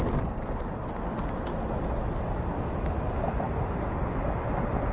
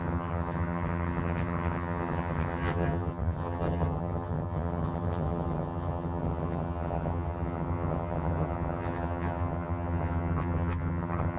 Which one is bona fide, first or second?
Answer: first